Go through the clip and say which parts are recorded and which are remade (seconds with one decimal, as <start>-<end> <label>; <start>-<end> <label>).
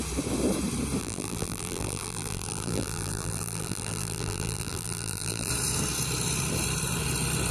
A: 0.0-1.0 recorded; 1.0-5.5 remade; 5.5-7.5 recorded